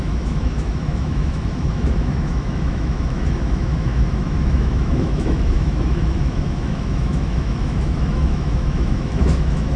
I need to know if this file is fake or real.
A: fake